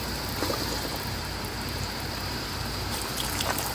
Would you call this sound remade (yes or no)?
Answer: yes